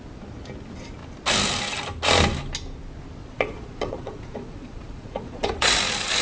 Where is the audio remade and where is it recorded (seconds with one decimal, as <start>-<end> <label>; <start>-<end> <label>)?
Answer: 0.0-3.2 recorded; 3.2-5.7 remade; 5.7-6.2 recorded